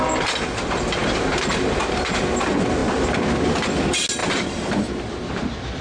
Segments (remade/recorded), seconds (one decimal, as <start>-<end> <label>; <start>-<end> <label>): 0.0-4.2 recorded; 4.2-5.8 remade